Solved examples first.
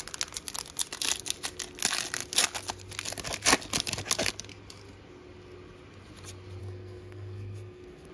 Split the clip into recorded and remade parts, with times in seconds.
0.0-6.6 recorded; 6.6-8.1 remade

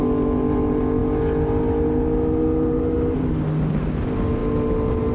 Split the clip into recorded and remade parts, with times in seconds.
0.0-5.1 recorded

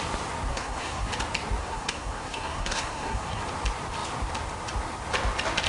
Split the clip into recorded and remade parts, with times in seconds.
0.0-0.5 recorded; 0.5-1.1 remade; 1.1-1.6 recorded; 1.6-3.4 remade; 3.4-5.7 recorded

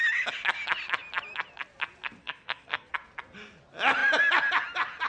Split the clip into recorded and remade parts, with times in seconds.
0.0-2.2 recorded; 2.2-2.9 remade; 2.9-5.1 recorded

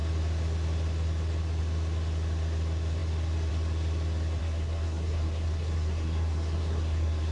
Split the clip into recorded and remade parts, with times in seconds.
0.0-4.4 recorded; 4.4-7.3 remade